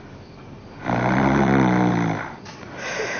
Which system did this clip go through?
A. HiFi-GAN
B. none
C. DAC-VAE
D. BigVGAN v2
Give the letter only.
D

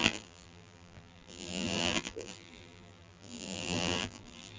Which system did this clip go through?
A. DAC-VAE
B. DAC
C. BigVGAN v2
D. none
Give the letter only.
C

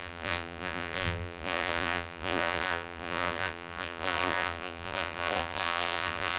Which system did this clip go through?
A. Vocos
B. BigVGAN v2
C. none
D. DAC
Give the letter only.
B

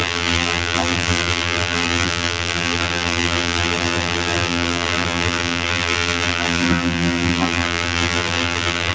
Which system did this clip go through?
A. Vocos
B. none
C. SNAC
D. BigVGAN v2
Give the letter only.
D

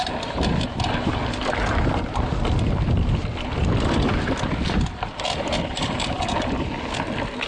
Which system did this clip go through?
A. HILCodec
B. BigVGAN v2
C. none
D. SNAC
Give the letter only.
C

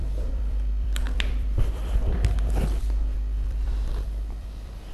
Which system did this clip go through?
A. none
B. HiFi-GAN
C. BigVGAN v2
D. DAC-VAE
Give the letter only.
C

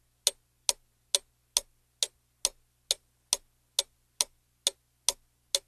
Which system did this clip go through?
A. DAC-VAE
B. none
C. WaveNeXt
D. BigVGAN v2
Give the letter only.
B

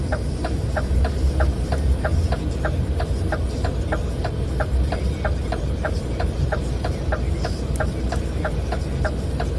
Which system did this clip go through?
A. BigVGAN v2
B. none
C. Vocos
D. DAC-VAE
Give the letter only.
A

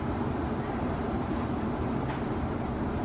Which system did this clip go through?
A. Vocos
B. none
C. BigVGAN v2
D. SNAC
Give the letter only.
C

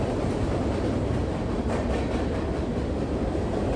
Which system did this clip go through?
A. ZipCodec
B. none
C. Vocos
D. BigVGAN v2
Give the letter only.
D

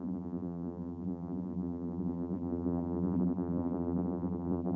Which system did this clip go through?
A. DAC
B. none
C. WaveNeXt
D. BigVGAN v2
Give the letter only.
D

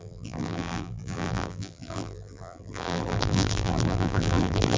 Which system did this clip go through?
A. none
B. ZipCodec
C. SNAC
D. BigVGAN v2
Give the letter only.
D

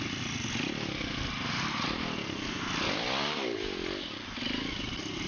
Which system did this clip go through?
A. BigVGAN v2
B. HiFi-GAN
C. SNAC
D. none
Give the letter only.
D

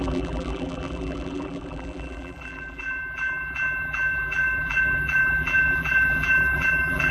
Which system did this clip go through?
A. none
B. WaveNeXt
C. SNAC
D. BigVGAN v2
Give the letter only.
D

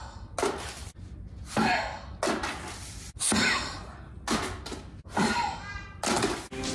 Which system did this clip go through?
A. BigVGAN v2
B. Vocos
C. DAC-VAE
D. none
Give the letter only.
D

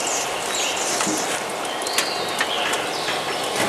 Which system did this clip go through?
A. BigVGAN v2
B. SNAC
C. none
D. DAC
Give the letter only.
C